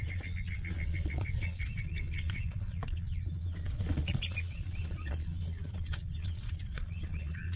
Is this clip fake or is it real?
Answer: fake